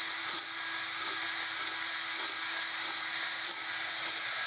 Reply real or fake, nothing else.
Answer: real